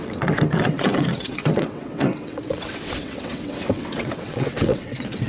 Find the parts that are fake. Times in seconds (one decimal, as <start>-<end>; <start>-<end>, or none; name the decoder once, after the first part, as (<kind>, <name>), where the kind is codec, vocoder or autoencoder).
0.0-5.3 (vocoder, WaveNeXt)